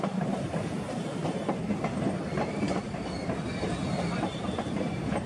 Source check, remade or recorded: remade